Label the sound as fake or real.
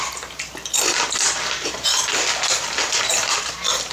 real